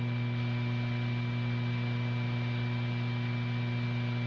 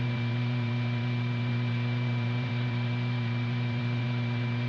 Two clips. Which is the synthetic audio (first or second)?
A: second